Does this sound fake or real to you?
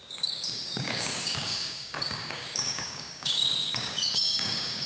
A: fake